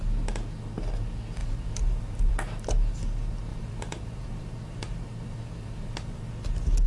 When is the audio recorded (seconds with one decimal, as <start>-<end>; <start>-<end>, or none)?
0.0-1.4; 2.3-3.5; 6.3-6.9

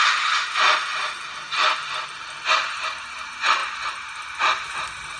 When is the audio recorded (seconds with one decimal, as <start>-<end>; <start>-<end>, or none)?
0.0-0.9; 1.9-3.6; 4.4-5.2

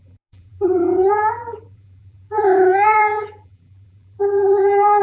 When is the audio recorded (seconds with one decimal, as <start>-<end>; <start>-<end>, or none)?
none

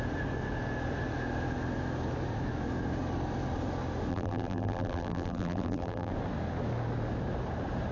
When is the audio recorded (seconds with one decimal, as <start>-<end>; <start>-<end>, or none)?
0.0-4.1; 6.1-7.9

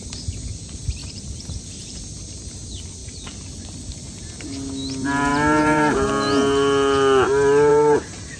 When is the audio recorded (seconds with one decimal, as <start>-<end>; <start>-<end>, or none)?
0.0-1.0; 2.0-3.0; 4.2-5.3; 6.1-7.7